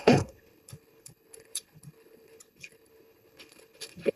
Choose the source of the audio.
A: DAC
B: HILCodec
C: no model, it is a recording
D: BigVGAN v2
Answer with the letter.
B